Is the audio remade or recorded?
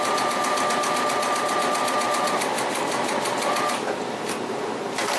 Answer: recorded